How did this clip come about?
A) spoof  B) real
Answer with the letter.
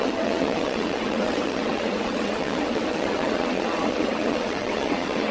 A